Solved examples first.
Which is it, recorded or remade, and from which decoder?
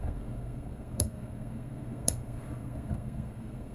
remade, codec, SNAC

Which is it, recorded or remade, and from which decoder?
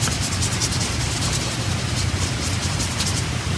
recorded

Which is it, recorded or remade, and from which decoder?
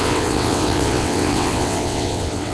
remade, vocoder, WaveNeXt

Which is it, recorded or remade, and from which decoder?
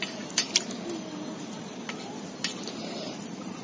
recorded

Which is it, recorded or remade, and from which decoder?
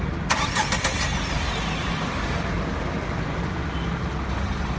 recorded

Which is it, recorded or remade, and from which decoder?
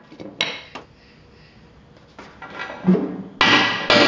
recorded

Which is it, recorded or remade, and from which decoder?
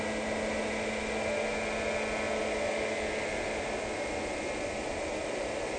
recorded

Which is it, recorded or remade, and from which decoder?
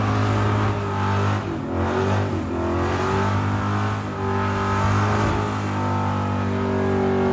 recorded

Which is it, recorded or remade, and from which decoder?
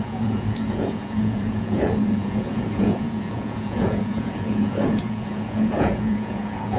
remade, vocoder, Vocos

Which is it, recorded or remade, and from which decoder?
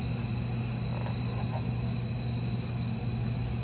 recorded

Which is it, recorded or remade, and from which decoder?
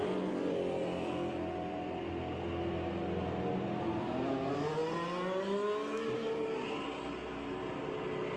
recorded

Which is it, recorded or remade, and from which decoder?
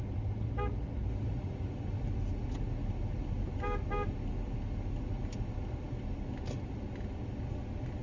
recorded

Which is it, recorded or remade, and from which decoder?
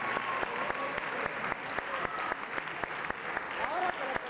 recorded